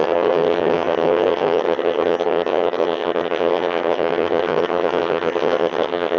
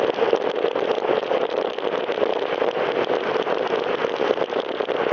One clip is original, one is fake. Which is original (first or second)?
second